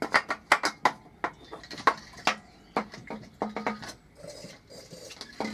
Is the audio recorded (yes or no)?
yes